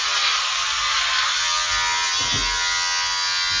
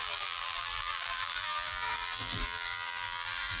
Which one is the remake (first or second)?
second